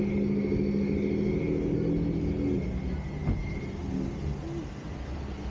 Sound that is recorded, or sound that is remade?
recorded